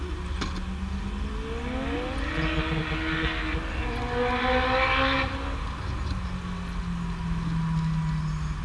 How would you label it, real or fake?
real